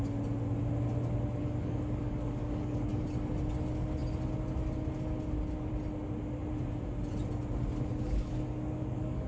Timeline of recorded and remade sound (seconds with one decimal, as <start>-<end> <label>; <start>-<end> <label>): 0.0-1.4 recorded; 1.4-3.0 remade; 3.0-7.9 recorded; 7.9-9.3 remade